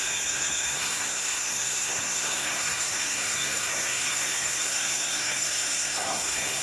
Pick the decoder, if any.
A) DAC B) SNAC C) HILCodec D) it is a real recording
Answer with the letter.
B